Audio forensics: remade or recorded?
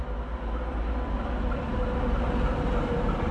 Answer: recorded